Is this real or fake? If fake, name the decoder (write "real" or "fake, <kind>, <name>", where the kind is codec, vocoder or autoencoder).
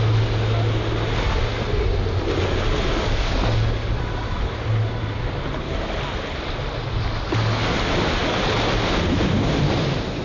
real